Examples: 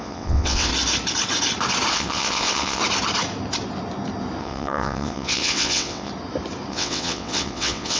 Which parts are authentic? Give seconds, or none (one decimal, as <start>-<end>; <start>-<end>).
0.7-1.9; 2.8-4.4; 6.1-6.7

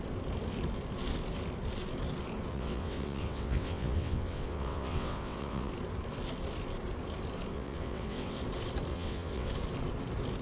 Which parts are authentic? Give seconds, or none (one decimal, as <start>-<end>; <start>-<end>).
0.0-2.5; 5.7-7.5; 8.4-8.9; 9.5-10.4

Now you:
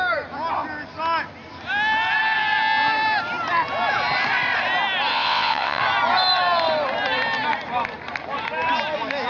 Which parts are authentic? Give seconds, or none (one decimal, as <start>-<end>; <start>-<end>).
0.0-5.1; 5.8-9.3

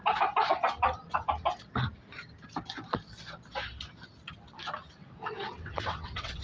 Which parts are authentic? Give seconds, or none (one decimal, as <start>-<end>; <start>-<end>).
0.0-5.0